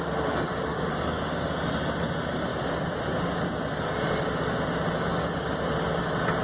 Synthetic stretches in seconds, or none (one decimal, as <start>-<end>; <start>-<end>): 0.7-1.5